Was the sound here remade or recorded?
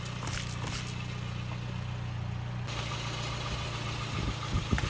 recorded